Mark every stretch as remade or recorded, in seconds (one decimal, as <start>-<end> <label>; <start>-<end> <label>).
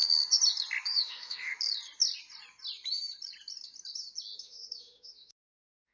0.0-0.9 recorded; 0.9-1.5 remade; 1.5-4.4 recorded; 4.4-5.9 remade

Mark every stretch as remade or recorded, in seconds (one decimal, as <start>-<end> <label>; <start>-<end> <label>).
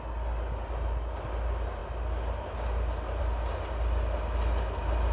0.0-5.1 recorded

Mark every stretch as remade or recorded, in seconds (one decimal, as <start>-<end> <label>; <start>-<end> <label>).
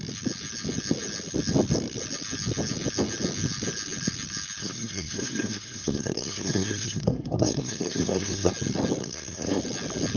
0.0-4.6 recorded; 4.6-8.5 remade; 8.5-9.0 recorded; 9.0-9.6 remade; 9.6-10.2 recorded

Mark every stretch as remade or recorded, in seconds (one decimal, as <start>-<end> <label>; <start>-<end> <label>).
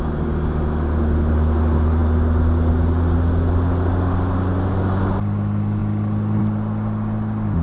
0.0-7.6 recorded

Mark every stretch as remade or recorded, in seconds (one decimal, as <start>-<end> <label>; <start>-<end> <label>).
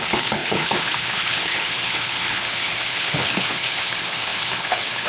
0.0-5.1 remade